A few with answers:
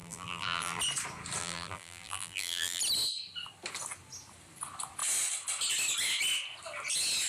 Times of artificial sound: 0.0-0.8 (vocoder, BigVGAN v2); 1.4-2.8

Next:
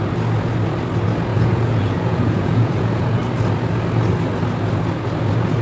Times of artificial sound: 1.3-3.2 (vocoder, Vocos)

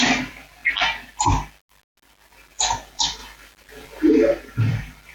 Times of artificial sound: 0.0-0.6 (vocoder, BigVGAN v2); 2.5-5.1

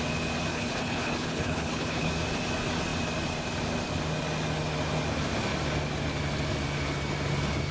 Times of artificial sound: 0.5-2.1 (codec, HILCodec)

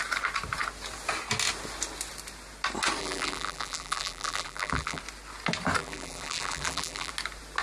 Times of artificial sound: 3.0-5.0 (vocoder, BigVGAN v2); 5.8-7.1

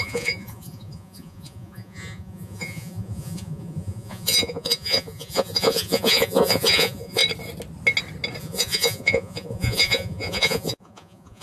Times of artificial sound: 0.0-7.2 (vocoder, Vocos); 8.4-11.4

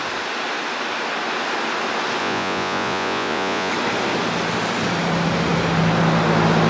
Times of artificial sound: 2.2-3.7 (vocoder, Vocos)